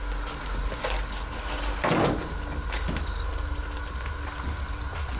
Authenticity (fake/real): real